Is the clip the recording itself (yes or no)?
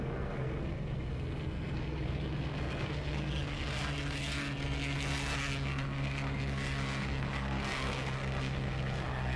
no